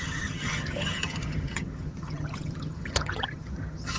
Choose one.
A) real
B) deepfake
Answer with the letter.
B